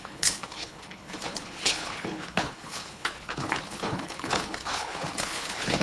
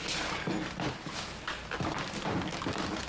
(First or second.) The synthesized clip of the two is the first